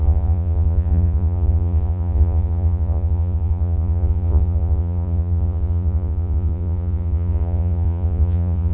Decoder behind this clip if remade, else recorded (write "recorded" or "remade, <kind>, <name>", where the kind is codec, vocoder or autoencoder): remade, vocoder, Vocos